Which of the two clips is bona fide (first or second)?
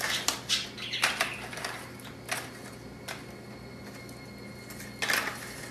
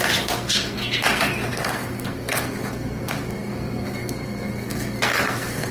first